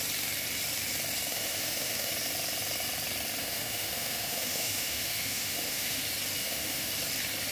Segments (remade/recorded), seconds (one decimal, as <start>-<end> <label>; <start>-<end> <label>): 0.0-1.3 recorded; 1.3-2.1 remade; 2.1-3.4 recorded; 3.4-6.0 remade; 6.0-6.4 recorded; 6.4-6.9 remade; 6.9-7.5 recorded